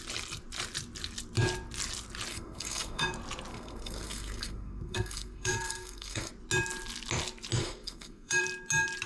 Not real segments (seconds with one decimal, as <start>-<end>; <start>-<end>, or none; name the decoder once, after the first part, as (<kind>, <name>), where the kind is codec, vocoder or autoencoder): 2.3-3.0 (codec, SNAC); 3.5-6.3; 7.6-8.4